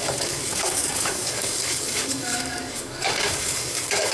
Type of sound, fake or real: fake